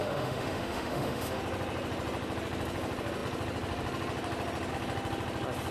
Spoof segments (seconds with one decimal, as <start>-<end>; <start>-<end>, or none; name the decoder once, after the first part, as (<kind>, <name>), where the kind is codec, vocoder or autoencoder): 0.0-1.4 (autoencoder, DAC-VAE)